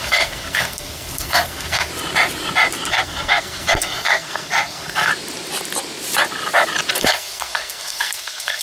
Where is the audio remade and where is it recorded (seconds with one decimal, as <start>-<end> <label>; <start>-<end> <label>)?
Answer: 0.0-1.9 remade; 1.9-2.9 recorded; 2.9-5.1 remade; 5.1-7.0 recorded; 7.0-8.6 remade